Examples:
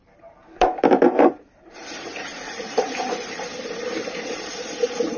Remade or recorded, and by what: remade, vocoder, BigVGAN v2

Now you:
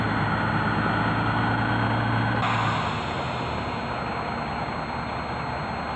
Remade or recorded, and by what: recorded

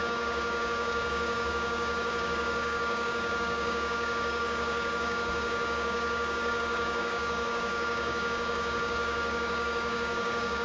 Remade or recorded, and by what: remade, codec, DAC